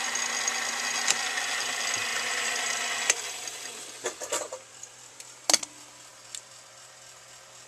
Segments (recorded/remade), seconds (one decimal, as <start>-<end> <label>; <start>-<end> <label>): 0.0-2.1 recorded; 2.1-3.2 remade; 3.2-4.4 recorded; 4.4-5.2 remade; 5.2-6.1 recorded; 6.1-6.7 remade; 6.7-7.7 recorded